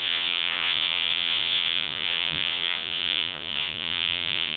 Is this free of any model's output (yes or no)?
no